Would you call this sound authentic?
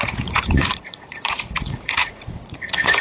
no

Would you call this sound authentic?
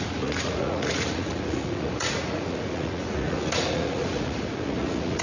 no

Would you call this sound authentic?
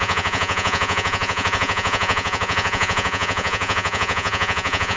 no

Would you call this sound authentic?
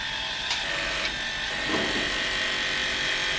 yes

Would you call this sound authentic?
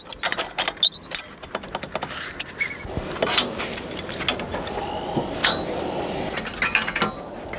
yes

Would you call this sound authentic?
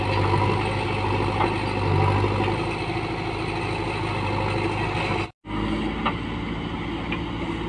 yes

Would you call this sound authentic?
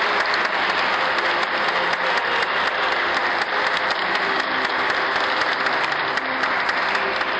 yes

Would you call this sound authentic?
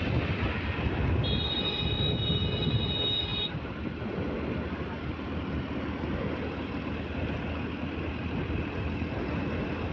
yes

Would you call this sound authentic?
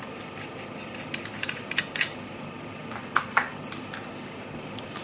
yes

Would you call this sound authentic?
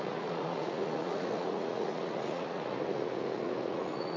no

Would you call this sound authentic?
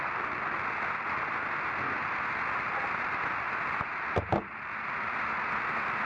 yes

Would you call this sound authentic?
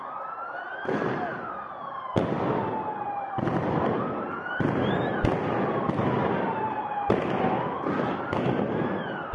yes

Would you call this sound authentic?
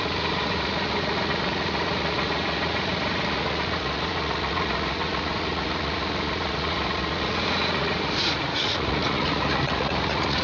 no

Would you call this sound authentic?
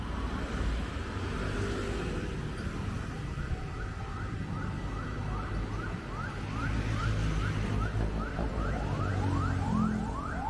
yes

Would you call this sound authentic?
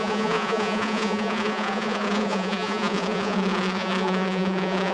no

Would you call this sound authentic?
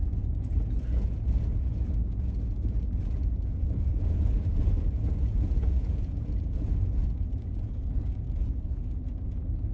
no